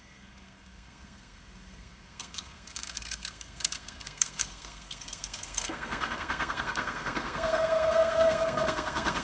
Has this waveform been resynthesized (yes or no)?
yes